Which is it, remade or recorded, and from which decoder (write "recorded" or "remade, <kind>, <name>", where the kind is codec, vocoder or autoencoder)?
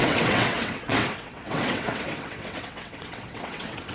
remade, vocoder, WaveNeXt